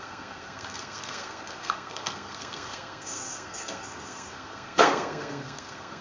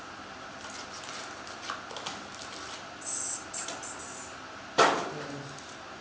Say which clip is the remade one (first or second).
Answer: first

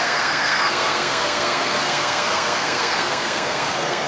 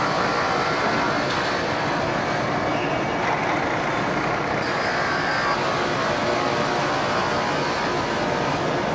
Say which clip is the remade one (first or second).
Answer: first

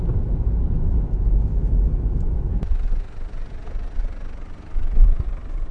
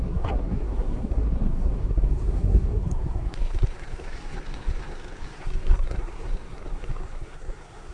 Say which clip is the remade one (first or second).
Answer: second